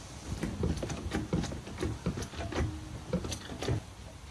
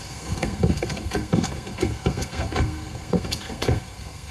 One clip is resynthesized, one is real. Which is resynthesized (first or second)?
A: second